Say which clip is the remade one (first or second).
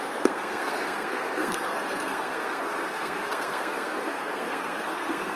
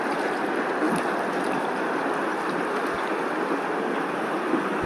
first